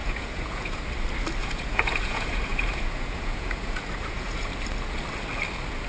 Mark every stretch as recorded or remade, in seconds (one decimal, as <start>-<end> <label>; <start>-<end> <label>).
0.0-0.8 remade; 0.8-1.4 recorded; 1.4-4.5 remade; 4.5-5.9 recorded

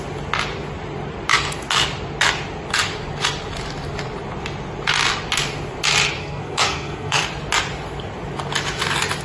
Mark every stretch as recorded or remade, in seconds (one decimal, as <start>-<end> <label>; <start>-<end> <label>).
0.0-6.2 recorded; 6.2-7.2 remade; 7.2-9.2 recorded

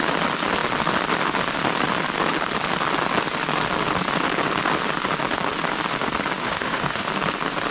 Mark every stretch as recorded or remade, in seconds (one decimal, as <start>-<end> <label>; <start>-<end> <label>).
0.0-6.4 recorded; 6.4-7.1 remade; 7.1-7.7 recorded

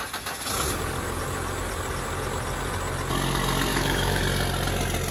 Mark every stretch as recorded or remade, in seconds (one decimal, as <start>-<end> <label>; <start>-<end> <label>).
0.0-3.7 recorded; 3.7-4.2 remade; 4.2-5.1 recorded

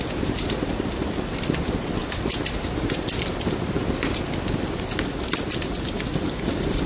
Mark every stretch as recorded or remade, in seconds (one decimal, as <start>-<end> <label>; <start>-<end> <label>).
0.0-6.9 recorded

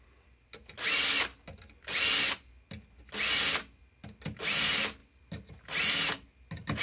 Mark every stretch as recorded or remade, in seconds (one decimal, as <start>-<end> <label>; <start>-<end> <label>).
0.0-6.8 recorded

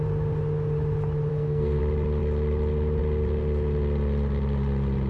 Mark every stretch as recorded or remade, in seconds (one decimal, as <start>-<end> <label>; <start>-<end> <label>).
0.0-1.3 recorded; 1.3-1.8 remade; 1.8-5.1 recorded